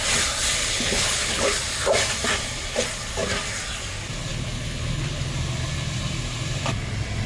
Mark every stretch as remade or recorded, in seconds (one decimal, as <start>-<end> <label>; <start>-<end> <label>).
0.0-0.6 recorded; 0.6-1.6 remade; 1.6-4.3 recorded; 4.3-5.3 remade; 5.3-7.3 recorded